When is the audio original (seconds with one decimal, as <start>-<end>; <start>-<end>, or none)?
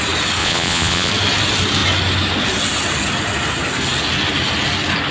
0.0-0.4; 1.1-5.1